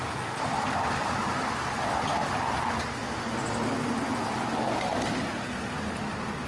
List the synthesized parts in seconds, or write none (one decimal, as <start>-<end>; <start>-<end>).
none